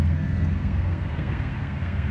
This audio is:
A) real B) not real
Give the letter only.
B